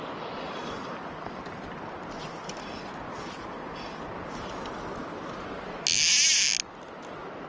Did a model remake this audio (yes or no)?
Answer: no